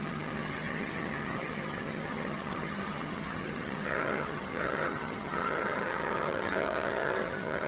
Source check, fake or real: fake